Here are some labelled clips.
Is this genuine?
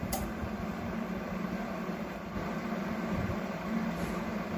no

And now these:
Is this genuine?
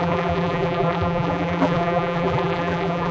no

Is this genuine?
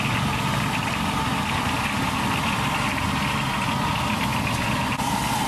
yes